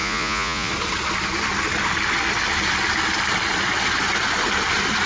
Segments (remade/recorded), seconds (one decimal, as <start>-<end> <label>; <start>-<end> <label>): 0.0-0.7 remade; 0.7-5.1 recorded